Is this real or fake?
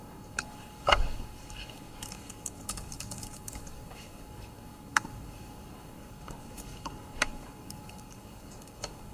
fake